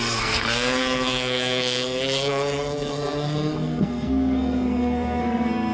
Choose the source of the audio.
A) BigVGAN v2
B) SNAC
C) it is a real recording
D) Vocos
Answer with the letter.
B